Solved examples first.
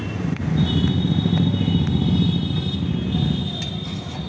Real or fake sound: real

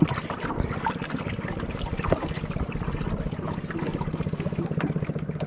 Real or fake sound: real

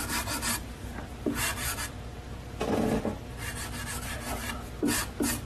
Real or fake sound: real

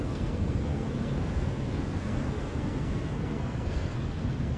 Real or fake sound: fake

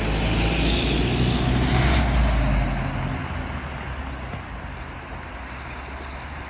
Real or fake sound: real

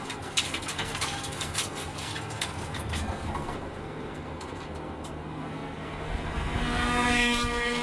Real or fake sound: fake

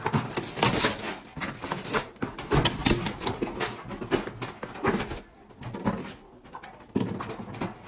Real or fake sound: real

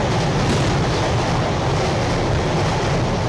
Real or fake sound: real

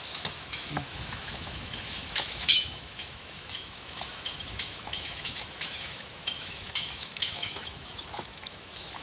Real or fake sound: fake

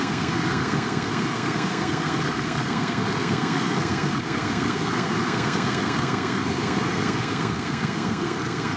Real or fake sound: fake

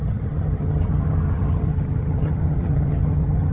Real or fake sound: fake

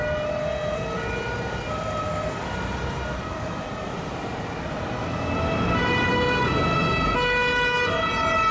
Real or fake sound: real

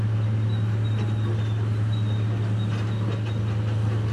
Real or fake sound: real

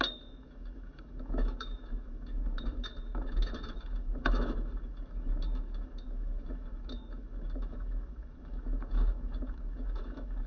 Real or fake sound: fake